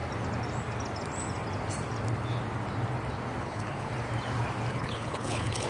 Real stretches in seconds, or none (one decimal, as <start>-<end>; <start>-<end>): 0.0-3.4; 3.9-4.7